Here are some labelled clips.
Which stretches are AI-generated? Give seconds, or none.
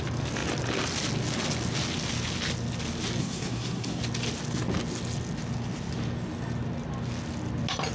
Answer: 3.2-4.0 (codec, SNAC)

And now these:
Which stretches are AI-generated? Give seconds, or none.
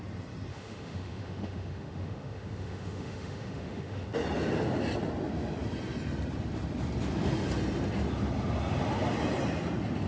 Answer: 0.5-4.1 (autoencoder, DAC-VAE)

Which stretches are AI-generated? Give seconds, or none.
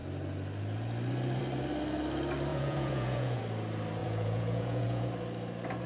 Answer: 2.5-3.4 (vocoder, Vocos); 4.0-5.1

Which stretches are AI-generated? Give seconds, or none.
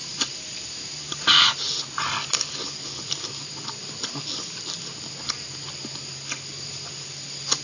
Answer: none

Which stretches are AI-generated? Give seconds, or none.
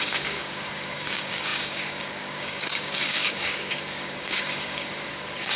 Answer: 0.0-5.6 (codec, DAC)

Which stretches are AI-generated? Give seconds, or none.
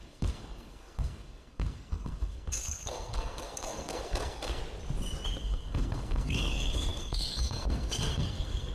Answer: 0.0-4.6 (codec, SNAC); 5.4-8.7